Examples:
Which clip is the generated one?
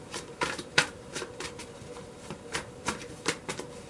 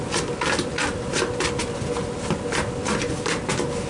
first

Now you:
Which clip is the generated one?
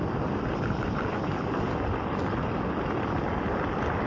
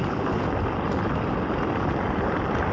second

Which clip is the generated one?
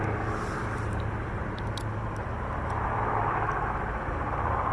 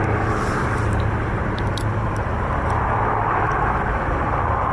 second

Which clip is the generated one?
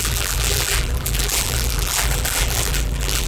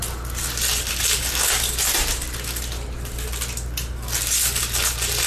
first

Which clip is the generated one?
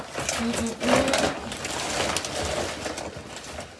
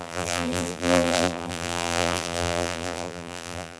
second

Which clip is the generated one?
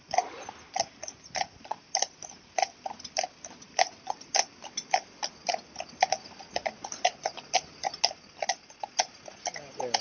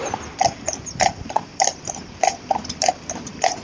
second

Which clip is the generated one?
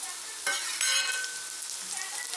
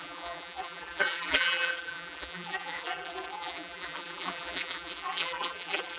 second